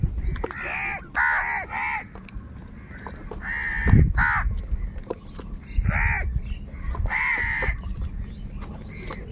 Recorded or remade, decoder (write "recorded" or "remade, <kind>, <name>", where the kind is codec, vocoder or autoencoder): recorded